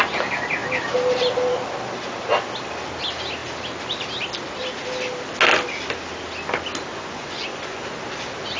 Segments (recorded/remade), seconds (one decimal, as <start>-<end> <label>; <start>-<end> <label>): 0.0-6.9 recorded; 6.9-7.8 remade; 7.8-8.6 recorded

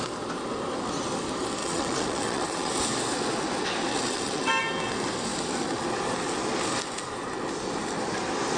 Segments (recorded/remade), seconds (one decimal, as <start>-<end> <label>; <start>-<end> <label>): 0.0-1.6 recorded; 1.6-2.7 remade; 2.7-3.9 recorded; 3.9-4.5 remade; 4.5-8.6 recorded

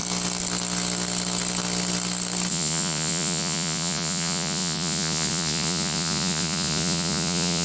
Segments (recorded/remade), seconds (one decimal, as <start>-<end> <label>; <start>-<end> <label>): 0.0-2.5 recorded; 2.5-7.6 remade

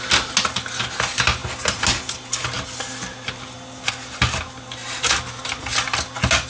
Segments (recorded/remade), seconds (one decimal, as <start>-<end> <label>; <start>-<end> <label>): 0.0-6.5 recorded

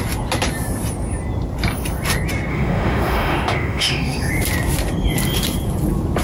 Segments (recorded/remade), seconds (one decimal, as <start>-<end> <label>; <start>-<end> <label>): 0.0-2.5 recorded; 2.5-4.3 remade; 4.3-6.2 recorded

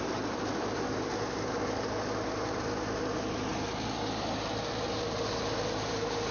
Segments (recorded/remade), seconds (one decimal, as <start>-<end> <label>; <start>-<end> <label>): 0.0-6.3 recorded